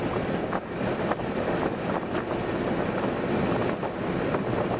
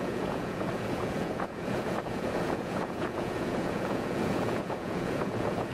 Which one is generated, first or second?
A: second